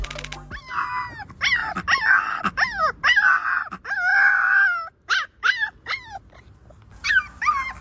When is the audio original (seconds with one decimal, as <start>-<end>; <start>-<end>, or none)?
0.0-1.6; 2.8-4.1